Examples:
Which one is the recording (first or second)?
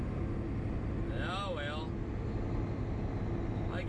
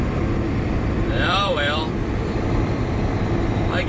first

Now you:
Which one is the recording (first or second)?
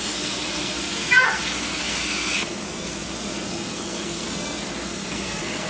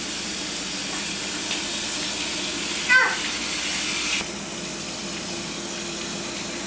second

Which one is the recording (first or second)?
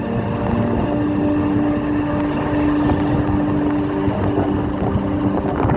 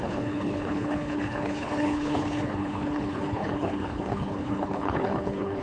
first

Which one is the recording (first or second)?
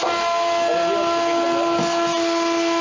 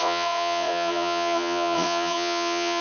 first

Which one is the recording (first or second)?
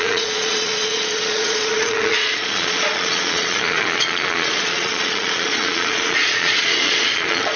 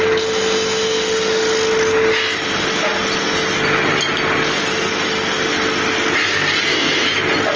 second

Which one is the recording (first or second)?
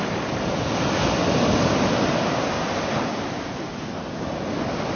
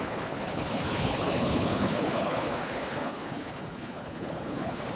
first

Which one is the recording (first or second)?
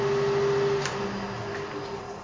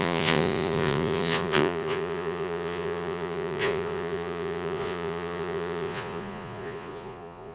first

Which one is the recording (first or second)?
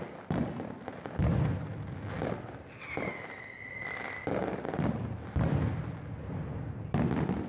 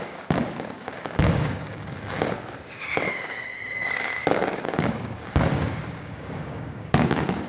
first